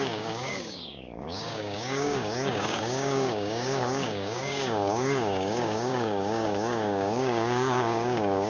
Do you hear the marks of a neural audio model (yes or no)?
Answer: yes